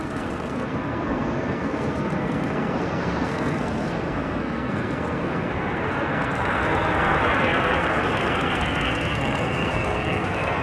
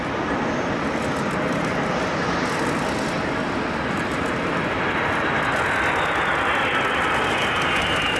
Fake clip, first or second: first